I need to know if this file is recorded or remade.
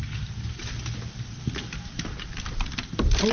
recorded